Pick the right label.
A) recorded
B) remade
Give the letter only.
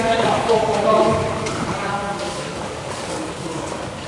B